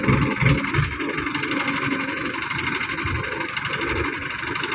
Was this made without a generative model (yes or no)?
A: yes